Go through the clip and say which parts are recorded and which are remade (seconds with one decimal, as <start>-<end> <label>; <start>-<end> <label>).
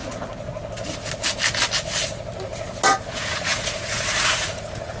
0.0-3.0 recorded; 3.0-5.0 remade